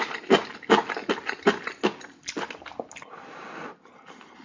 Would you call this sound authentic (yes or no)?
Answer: yes